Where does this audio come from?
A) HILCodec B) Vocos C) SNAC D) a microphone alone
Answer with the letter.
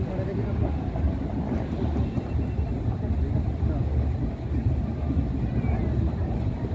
D